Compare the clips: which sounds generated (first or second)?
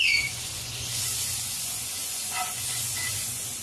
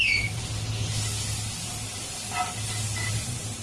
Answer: first